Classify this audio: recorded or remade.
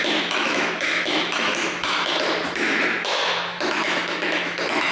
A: remade